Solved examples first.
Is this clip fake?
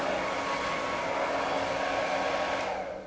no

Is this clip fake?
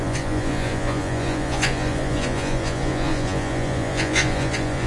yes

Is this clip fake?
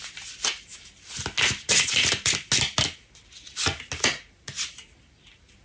no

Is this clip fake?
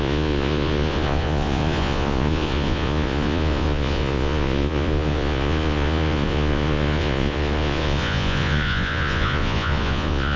yes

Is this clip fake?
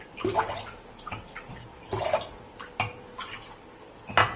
no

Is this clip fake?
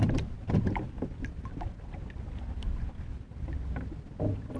no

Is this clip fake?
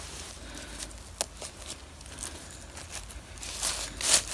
no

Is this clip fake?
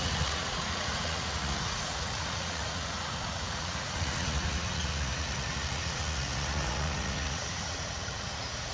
yes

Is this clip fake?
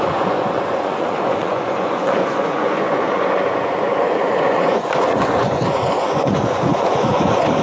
yes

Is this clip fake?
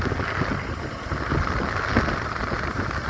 no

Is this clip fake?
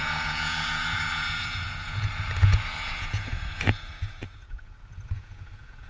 yes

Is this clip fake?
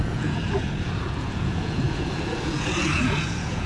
yes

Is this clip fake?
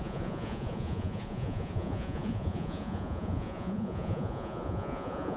yes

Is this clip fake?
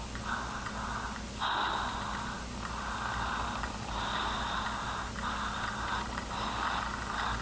no